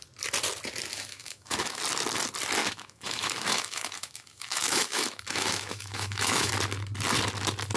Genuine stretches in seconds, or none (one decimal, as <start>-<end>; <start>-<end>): 0.0-0.9; 1.8-2.6; 6.5-7.8